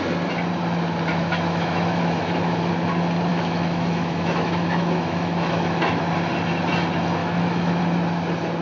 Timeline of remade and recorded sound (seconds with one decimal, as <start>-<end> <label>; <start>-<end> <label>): 0.0-1.1 recorded; 1.1-2.7 remade; 2.7-3.3 recorded; 3.3-6.0 remade; 6.0-7.2 recorded; 7.2-7.8 remade; 7.8-8.6 recorded